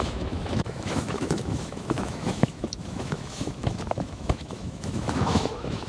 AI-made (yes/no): yes